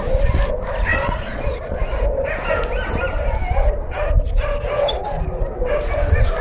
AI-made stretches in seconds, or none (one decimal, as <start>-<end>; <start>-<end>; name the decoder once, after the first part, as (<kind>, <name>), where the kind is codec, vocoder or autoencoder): 0.9-1.8 (vocoder, Vocos)